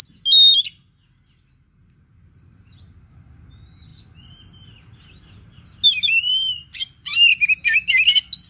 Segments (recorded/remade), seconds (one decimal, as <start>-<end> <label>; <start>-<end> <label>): 0.0-8.5 recorded